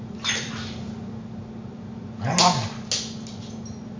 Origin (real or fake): real